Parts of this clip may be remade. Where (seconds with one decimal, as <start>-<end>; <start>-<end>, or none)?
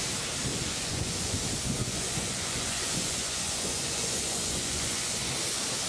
0.5-1.4; 1.8-5.3